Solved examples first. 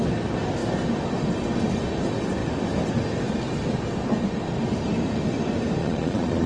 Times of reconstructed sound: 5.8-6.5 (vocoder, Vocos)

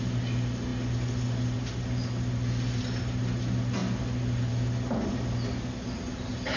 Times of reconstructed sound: none

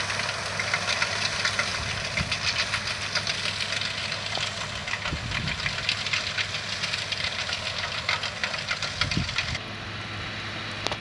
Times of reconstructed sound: none

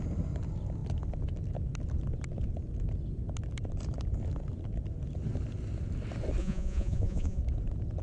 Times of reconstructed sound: 6.4-7.4 (vocoder, Vocos)

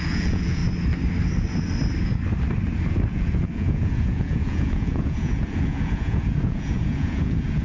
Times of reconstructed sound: 0.0-0.6 (vocoder, Vocos); 2.9-7.6

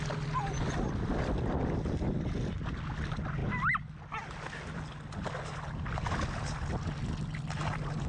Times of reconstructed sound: none

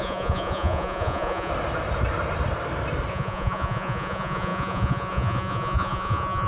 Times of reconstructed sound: 0.0-1.5 (vocoder, Vocos); 3.1-6.5